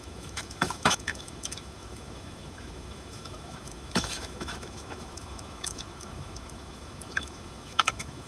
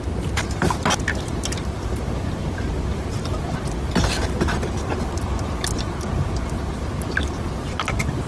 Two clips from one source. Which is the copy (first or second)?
first